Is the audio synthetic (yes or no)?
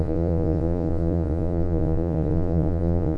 yes